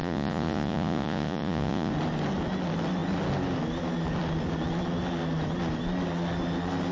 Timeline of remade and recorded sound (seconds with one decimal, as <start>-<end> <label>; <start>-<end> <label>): 0.0-1.9 remade; 1.9-6.9 recorded